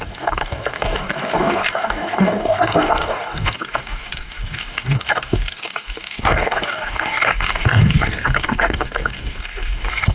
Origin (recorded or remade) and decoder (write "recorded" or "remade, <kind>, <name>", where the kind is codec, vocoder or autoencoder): remade, codec, DAC